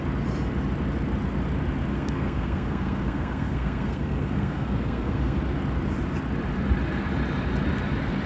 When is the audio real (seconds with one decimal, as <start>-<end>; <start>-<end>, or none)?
0.0-1.9; 5.4-8.3

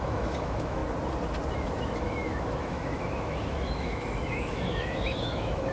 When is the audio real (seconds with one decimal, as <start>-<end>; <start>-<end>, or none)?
0.8-1.5

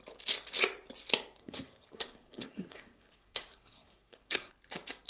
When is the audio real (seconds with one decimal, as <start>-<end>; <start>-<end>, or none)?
0.0-1.4; 4.5-5.1